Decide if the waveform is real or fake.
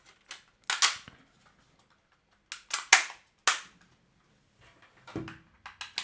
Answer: real